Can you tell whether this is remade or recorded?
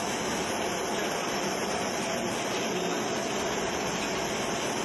recorded